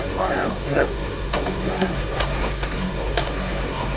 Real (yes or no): no